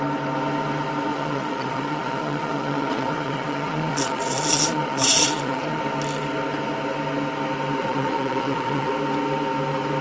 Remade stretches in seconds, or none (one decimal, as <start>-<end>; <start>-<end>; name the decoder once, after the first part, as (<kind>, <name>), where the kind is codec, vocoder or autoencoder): 1.1-5.8 (vocoder, Vocos); 7.8-8.9